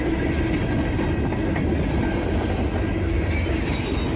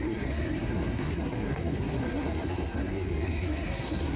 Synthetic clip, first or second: second